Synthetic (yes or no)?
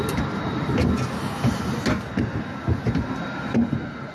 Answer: no